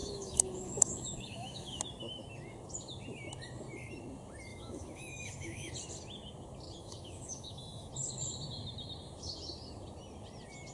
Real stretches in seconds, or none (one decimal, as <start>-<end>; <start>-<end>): 1.8-4.5; 5.7-6.8; 7.9-10.7